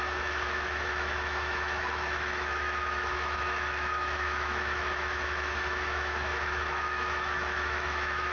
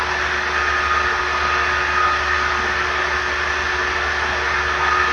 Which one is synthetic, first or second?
first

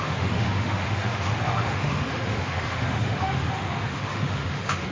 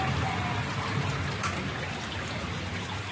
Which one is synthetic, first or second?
first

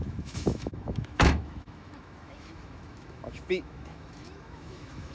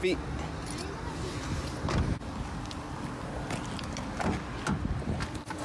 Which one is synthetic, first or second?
first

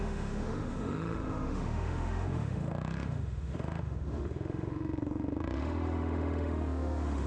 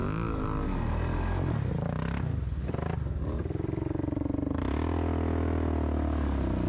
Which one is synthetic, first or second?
first